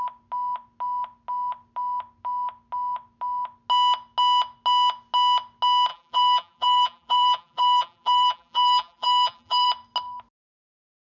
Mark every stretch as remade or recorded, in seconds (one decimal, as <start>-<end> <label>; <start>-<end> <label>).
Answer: 0.0-5.9 recorded; 5.9-9.7 remade; 9.7-11.0 recorded